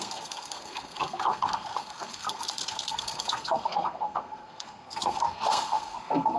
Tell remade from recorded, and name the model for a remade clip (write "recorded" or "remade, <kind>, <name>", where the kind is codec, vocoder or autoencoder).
remade, codec, SNAC